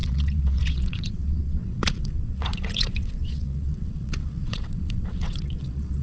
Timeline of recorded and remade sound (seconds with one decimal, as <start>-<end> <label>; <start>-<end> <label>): 0.0-6.0 remade